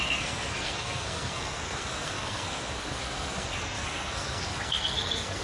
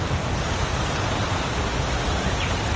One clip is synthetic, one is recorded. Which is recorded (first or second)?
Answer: second